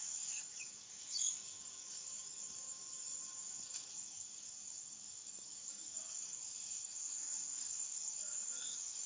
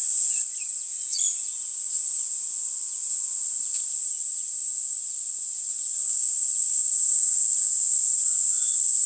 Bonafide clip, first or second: second